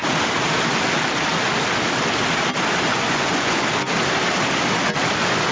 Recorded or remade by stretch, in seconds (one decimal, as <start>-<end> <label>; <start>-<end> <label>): 0.0-2.9 recorded; 2.9-3.6 remade; 3.6-5.5 recorded